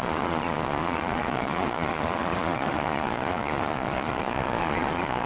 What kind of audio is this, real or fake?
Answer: fake